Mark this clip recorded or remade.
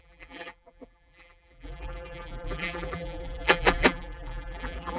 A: remade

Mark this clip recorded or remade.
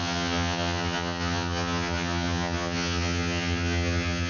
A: remade